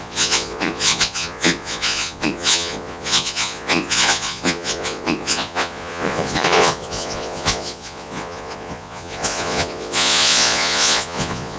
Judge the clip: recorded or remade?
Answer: remade